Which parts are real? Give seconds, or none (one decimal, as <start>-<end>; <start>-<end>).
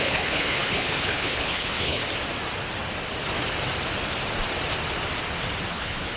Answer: 2.0-5.7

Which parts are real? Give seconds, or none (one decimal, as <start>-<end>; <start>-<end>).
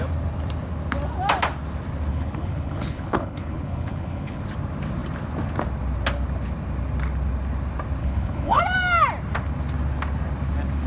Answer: 0.0-2.1; 4.4-8.0; 8.6-10.9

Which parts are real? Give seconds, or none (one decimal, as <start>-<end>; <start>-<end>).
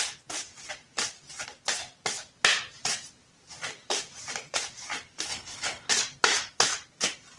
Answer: 0.0-5.3; 5.9-7.4